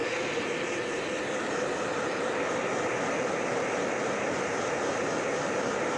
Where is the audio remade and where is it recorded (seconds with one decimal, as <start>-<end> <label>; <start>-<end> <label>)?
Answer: 0.0-6.0 recorded